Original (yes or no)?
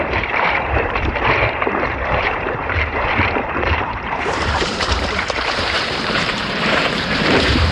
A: no